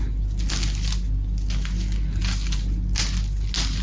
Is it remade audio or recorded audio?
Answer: recorded